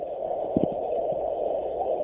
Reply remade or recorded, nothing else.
remade